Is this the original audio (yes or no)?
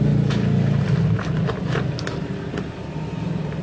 yes